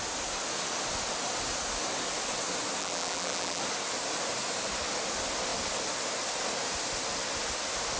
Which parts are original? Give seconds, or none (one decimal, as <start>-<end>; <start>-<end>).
0.0-2.8; 3.6-8.0